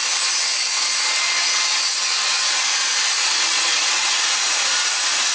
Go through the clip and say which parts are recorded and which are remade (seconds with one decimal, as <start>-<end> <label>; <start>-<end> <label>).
0.0-2.5 recorded; 2.5-5.3 remade